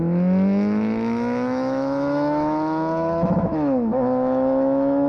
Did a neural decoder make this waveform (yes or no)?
yes